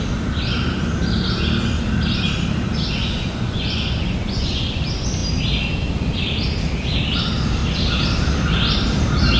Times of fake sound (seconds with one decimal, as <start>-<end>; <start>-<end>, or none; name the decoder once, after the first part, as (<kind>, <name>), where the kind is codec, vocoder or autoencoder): 3.0-4.8 (vocoder, Vocos)